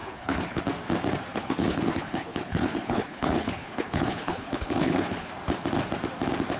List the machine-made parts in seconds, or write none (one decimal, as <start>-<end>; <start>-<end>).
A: 0.0-0.6; 1.3-5.3